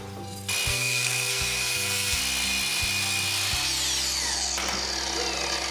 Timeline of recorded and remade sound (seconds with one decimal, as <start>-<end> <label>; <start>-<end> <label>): 0.0-0.7 recorded; 0.7-2.2 remade; 2.2-5.7 recorded